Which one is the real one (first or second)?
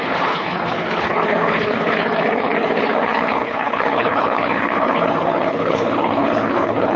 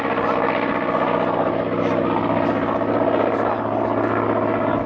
second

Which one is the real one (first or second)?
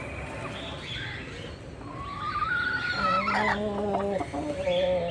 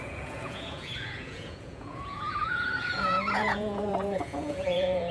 first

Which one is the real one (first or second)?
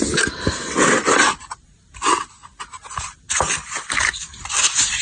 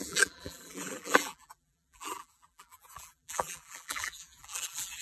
first